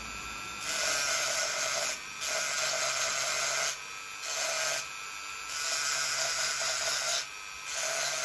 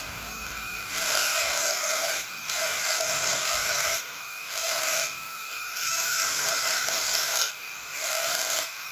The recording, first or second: first